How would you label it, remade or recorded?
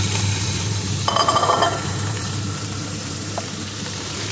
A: remade